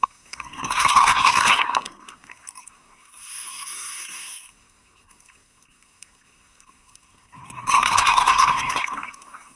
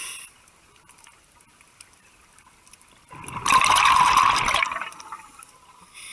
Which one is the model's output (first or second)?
first